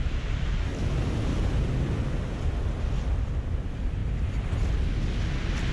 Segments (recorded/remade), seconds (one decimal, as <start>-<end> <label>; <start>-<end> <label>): 0.0-4.0 recorded; 4.0-4.7 remade; 4.7-5.7 recorded

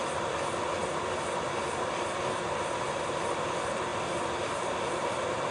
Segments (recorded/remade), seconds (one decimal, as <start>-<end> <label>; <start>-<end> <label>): 0.0-0.8 remade; 0.8-3.5 recorded; 3.5-5.5 remade

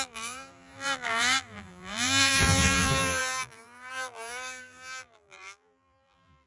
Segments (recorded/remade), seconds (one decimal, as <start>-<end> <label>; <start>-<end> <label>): 0.0-6.5 remade

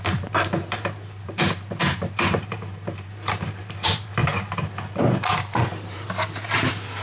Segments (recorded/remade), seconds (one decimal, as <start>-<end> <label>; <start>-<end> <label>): 0.0-4.2 remade; 4.2-5.3 recorded; 5.3-7.0 remade